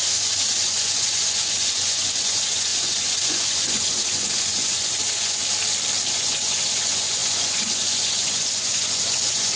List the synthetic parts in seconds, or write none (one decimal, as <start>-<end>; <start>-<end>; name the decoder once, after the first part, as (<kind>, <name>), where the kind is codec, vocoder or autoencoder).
0.0-5.4 (vocoder, Vocos); 6.1-9.6